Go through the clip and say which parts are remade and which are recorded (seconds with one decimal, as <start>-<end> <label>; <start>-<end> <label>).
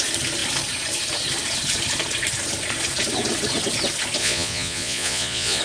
0.0-4.2 recorded; 4.2-5.6 remade